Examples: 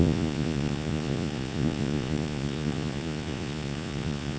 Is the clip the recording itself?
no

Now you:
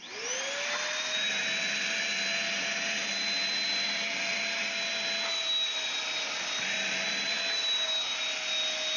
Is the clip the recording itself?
yes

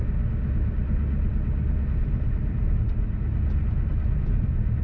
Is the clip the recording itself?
yes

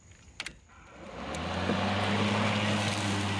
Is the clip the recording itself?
yes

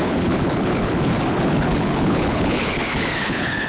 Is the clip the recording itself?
no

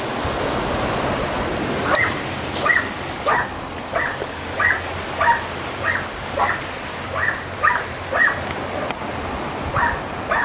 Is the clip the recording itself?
yes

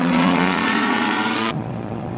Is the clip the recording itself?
no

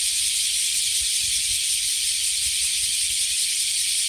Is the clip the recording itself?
yes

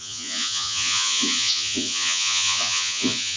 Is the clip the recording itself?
no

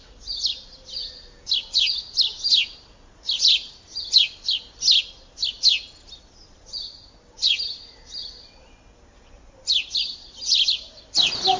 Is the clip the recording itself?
yes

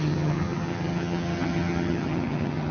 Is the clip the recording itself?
no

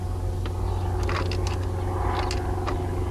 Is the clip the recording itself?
yes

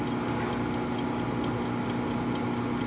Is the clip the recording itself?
yes